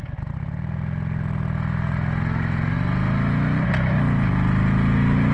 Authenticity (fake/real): real